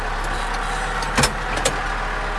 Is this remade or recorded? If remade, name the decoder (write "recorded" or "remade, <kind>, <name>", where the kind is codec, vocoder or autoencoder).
recorded